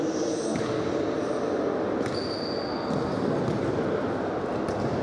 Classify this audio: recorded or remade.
recorded